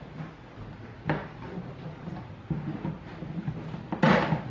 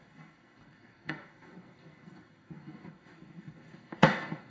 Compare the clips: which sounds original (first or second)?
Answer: first